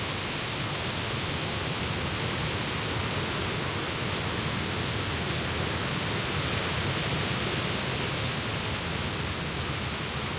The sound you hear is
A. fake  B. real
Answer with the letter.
B